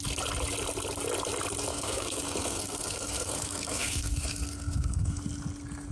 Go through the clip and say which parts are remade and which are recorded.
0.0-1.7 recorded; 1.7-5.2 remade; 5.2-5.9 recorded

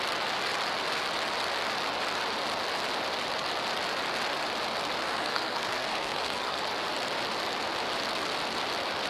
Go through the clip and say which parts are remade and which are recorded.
0.0-5.0 recorded; 5.0-6.6 remade; 6.6-9.1 recorded

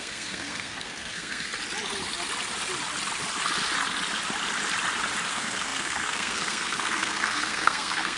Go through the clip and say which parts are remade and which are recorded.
0.0-1.5 remade; 1.5-5.3 recorded; 5.3-8.2 remade